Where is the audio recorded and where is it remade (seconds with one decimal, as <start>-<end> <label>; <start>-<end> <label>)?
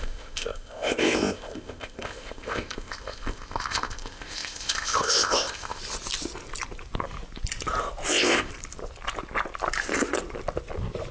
0.0-5.8 remade; 5.8-8.1 recorded; 8.1-8.5 remade; 8.5-11.1 recorded